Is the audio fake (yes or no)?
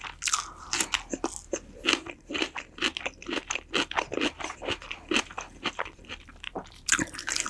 no